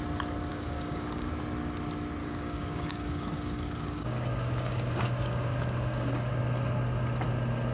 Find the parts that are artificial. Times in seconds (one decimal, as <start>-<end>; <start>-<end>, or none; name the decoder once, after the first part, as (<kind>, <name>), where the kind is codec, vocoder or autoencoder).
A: 0.5-1.3 (codec, DAC); 2.2-6.3